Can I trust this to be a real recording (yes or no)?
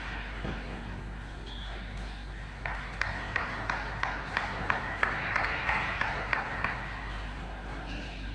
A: no